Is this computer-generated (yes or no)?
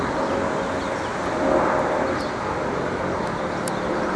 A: no